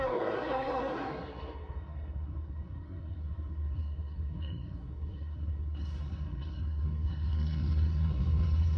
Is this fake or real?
fake